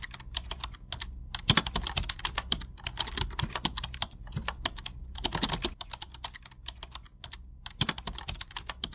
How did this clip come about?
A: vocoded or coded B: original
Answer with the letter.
B